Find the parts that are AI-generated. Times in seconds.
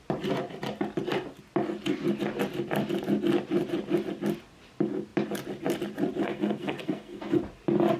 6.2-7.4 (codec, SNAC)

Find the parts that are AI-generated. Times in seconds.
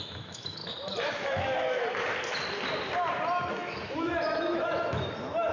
0.0-0.6 (autoencoder, DAC-VAE); 1.1-1.8; 3.5-5.5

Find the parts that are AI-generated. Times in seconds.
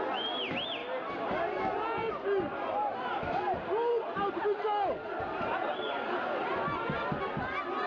none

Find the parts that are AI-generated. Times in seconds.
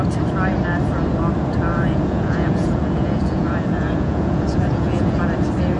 1.7-5.2 (vocoder, Vocos)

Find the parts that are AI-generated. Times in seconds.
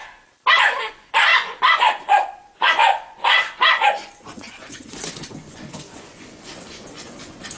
0.6-7.6 (vocoder, Vocos)